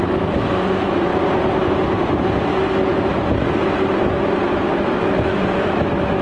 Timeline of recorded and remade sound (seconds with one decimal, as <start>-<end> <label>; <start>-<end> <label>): 0.0-1.1 remade; 1.1-4.8 recorded; 4.8-6.2 remade